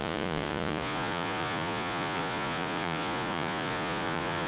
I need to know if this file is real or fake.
fake